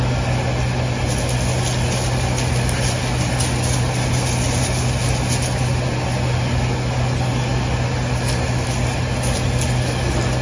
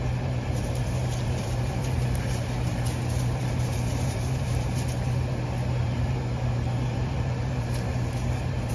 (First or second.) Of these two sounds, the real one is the first